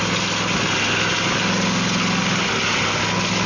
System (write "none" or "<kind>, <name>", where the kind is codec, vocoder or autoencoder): none